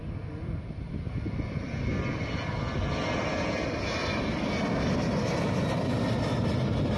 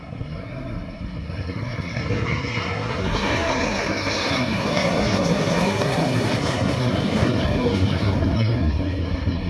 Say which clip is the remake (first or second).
second